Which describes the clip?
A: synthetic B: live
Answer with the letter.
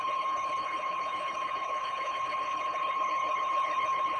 A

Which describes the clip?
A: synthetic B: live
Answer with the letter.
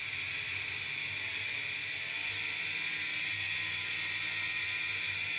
B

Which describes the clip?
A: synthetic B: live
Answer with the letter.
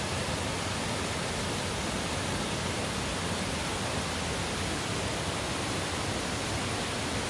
B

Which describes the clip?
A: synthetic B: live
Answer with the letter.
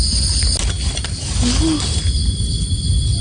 B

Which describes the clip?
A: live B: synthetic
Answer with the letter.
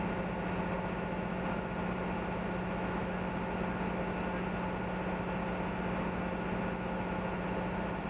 A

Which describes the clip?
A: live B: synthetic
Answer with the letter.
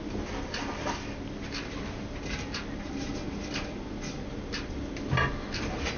A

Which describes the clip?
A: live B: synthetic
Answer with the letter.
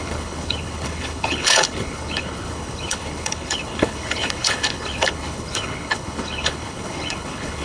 B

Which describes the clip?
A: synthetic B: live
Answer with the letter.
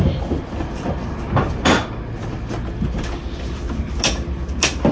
B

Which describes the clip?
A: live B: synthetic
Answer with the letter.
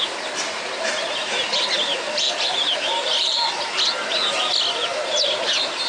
A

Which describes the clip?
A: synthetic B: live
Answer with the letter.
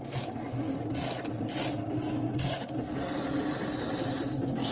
B